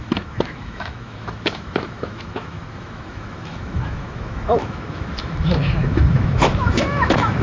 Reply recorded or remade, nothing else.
remade